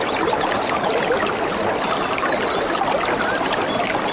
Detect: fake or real real